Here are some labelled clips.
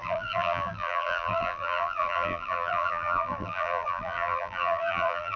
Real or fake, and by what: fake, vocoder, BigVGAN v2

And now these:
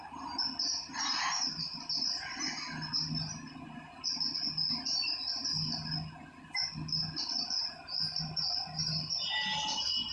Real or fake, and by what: real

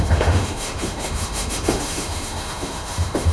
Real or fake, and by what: fake, autoencoder, DAC-VAE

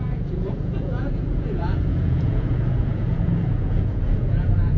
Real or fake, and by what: fake, vocoder, Vocos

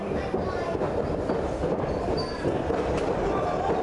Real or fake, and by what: fake, vocoder, BigVGAN v2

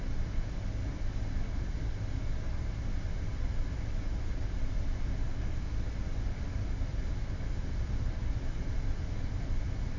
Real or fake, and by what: real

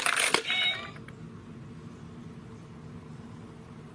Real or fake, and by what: real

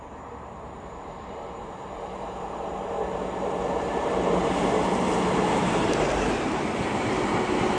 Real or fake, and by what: fake, vocoder, BigVGAN v2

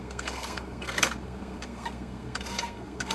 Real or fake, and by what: fake, codec, SNAC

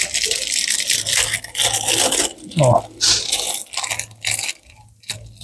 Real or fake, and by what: real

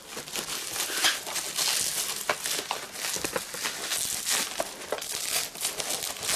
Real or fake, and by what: real